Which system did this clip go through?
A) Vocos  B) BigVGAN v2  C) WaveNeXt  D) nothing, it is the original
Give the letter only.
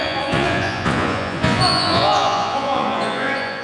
A